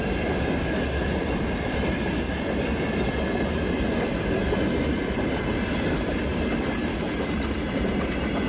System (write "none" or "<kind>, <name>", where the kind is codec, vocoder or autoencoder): vocoder, BigVGAN v2